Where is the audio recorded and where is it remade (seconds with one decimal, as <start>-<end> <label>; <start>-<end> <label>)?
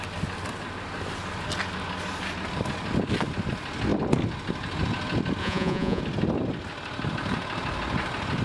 0.0-5.4 recorded; 5.4-6.0 remade; 6.0-8.4 recorded